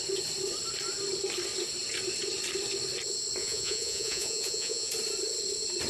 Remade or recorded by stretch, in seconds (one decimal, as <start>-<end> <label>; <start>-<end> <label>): 0.0-3.4 recorded; 3.4-4.9 remade; 4.9-5.9 recorded